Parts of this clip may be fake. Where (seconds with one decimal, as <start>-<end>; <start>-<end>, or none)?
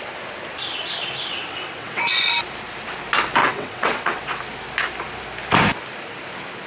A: 1.3-2.3; 3.4-4.2